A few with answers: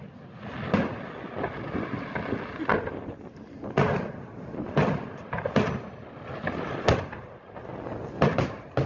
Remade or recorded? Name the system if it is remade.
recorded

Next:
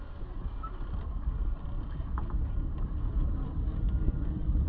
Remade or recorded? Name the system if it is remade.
recorded